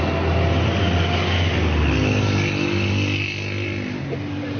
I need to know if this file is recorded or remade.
recorded